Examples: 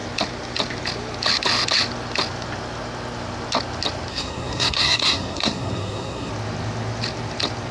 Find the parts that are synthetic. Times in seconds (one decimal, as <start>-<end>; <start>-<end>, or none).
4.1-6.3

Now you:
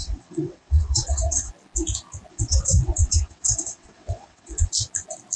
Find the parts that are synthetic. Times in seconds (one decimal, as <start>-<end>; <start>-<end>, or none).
0.0-1.5; 2.3-4.7

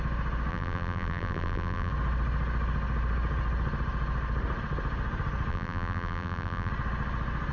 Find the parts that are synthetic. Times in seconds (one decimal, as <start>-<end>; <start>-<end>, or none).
0.5-1.9; 5.5-6.7